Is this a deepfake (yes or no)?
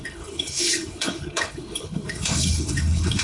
yes